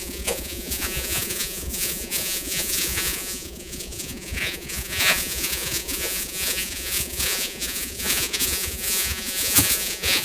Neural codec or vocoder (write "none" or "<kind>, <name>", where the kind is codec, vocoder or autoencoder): vocoder, Vocos